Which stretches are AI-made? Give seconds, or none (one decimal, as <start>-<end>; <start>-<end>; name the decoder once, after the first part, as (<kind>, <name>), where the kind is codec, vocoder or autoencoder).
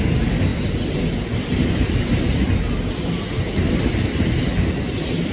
0.5-2.1 (vocoder, BigVGAN v2)